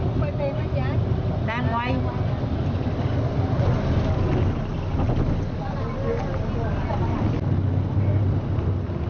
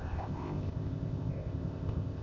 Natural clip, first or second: first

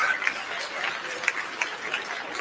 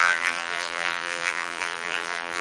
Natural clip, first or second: first